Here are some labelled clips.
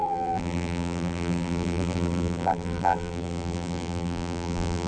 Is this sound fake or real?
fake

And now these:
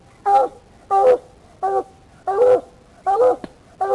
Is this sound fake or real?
real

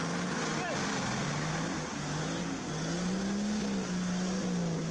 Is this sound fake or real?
real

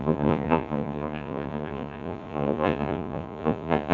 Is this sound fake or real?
fake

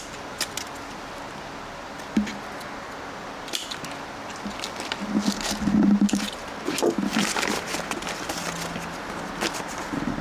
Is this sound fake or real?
real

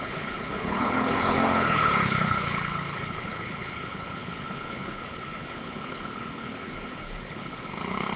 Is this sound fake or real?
fake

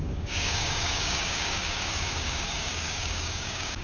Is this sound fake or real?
fake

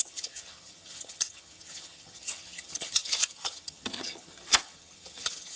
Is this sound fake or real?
fake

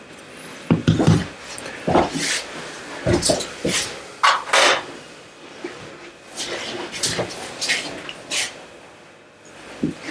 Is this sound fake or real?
real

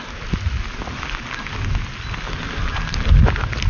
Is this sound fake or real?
real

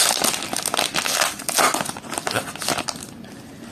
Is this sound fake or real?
real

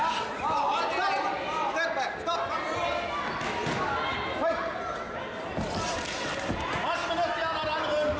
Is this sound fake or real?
real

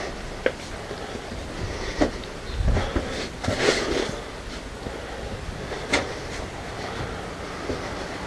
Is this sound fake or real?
real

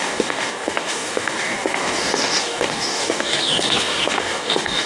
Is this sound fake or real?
fake